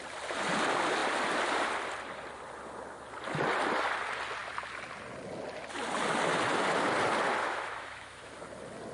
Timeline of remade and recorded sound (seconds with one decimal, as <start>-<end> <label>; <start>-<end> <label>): 0.0-7.4 recorded; 7.4-8.4 remade; 8.4-8.9 recorded